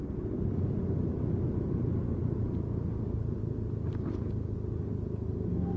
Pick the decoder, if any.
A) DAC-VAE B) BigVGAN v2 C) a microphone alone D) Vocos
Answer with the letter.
C